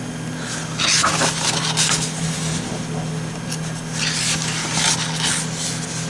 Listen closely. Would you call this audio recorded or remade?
recorded